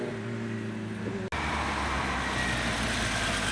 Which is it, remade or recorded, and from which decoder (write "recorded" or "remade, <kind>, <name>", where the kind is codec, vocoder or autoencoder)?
recorded